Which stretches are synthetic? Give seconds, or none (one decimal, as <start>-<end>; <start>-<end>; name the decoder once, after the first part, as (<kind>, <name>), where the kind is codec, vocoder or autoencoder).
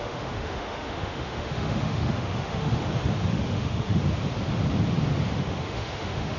0.0-2.8 (autoencoder, DAC-VAE); 3.3-4.0; 5.3-6.4